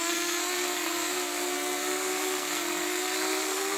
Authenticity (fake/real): fake